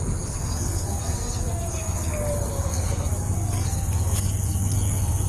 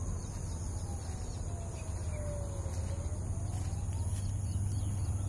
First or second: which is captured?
second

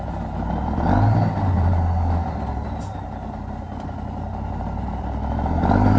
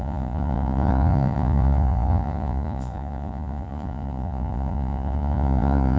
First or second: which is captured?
first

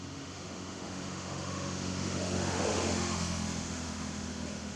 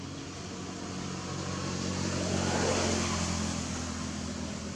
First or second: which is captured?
second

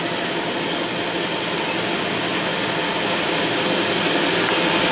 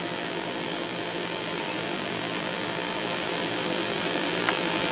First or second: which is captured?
first